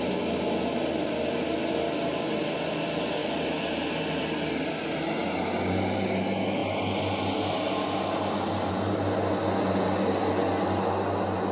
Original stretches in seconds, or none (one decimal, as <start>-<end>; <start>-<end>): 0.0-11.5